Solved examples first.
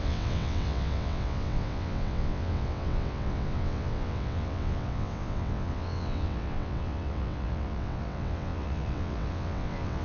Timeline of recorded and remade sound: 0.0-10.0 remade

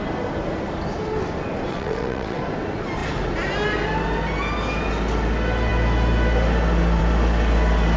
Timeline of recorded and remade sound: 0.0-1.7 recorded; 1.7-2.4 remade; 2.4-8.0 recorded

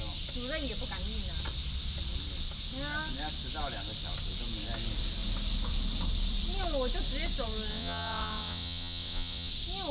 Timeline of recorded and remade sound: 0.0-7.7 recorded; 7.7-9.5 remade; 9.5-9.9 recorded

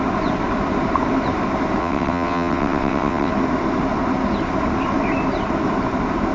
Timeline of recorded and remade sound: 0.0-1.8 recorded; 1.8-3.3 remade; 3.3-6.3 recorded

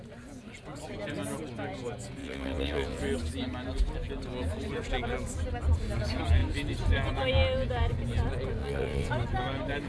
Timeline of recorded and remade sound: 0.0-2.2 recorded; 2.2-3.0 remade; 3.0-8.6 recorded; 8.6-9.1 remade; 9.1-9.9 recorded

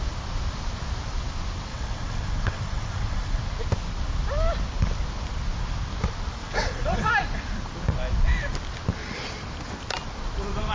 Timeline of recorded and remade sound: 0.0-1.7 recorded; 1.7-3.4 remade; 3.4-6.4 recorded; 6.4-7.1 remade; 7.1-10.7 recorded

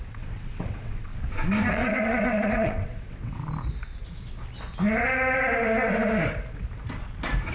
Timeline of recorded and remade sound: 0.0-1.1 remade; 1.1-1.7 recorded; 1.7-3.4 remade; 3.4-7.5 recorded